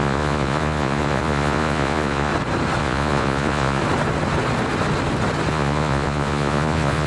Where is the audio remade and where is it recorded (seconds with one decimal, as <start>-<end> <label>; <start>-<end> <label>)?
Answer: 0.0-2.3 remade; 2.3-2.8 recorded; 2.8-3.8 remade; 3.8-5.5 recorded; 5.5-7.1 remade